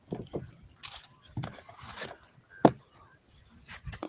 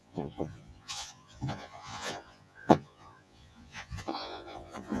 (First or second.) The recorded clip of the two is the first